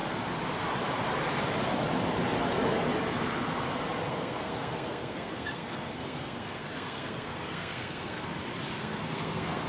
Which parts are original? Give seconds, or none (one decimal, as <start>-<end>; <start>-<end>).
0.0-4.1; 8.3-8.8